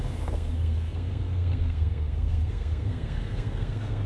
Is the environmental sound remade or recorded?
remade